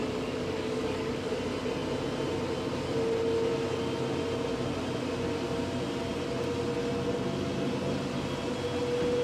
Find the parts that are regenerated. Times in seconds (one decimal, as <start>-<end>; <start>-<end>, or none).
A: 0.0-1.3